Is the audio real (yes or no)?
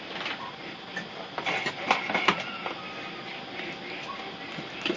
yes